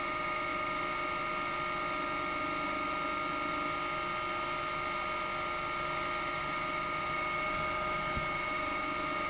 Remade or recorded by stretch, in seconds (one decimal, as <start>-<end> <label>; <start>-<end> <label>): 0.0-9.3 recorded